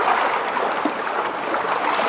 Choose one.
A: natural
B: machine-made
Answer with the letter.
A